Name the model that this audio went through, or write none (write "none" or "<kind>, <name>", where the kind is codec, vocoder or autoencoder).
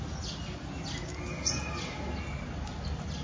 none